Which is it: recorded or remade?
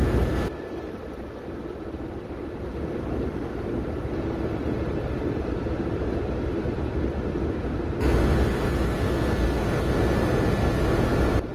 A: recorded